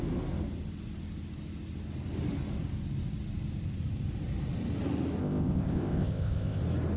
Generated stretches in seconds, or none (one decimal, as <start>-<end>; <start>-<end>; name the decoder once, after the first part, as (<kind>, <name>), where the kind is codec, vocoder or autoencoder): 5.2-6.6 (codec, ZipCodec)